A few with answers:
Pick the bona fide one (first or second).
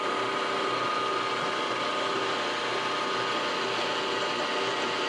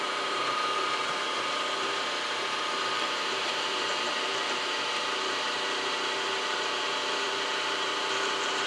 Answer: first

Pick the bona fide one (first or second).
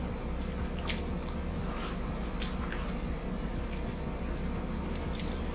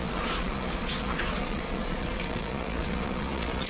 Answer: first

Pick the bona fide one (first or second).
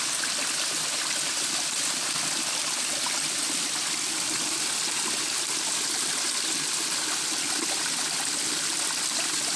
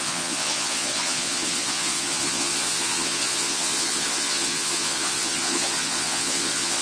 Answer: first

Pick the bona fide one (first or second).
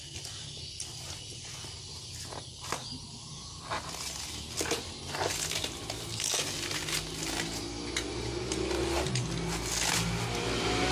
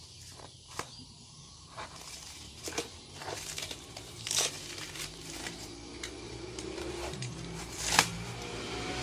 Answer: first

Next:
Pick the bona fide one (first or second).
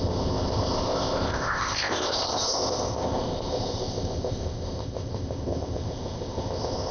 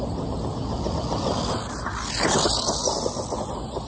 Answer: second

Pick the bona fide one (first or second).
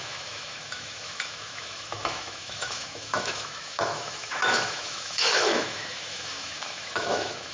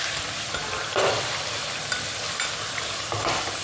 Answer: second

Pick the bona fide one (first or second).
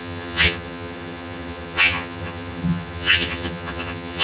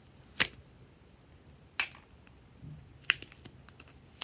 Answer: second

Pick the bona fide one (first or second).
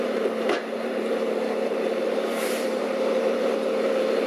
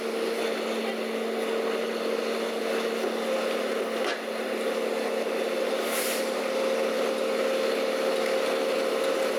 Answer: second